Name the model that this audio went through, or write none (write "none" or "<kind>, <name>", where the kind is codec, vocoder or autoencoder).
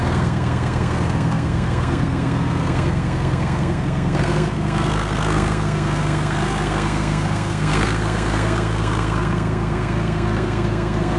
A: codec, SNAC